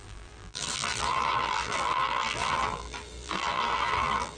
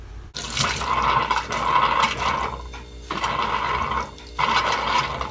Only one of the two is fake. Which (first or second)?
first